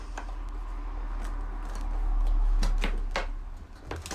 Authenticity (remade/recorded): recorded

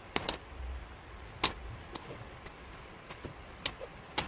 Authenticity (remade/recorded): recorded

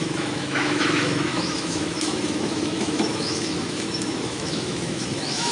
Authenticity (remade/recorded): remade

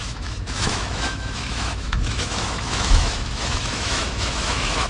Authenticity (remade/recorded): remade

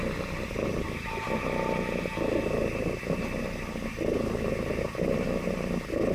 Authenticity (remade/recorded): recorded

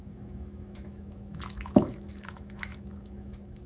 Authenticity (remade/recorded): remade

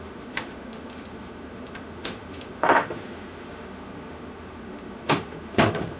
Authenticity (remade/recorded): remade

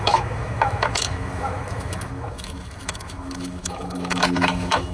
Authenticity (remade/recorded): remade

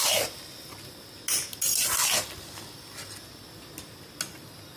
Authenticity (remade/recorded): recorded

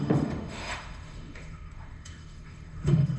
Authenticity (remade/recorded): remade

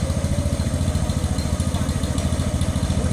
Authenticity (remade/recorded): recorded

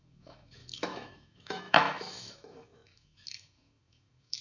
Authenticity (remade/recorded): remade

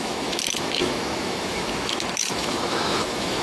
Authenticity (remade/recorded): remade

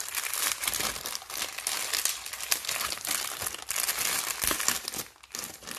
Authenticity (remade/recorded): recorded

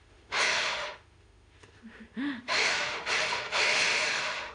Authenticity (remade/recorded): remade